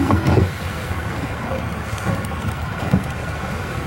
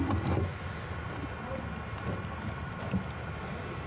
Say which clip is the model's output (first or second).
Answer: first